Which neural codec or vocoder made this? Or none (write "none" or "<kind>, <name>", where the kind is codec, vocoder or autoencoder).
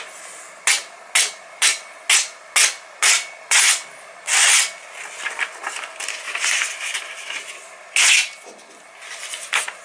none